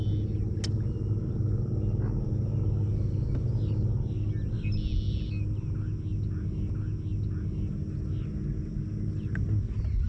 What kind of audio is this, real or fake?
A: real